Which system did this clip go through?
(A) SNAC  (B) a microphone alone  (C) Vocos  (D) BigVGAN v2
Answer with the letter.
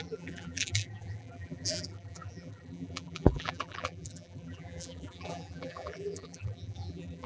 D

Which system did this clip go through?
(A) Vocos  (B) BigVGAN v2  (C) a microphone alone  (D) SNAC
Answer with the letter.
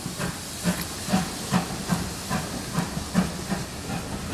C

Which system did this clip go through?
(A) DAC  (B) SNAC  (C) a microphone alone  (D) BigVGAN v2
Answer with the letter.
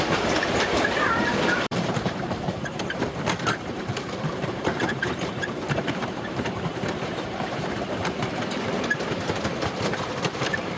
D